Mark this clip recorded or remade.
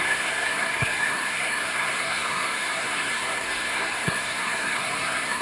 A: remade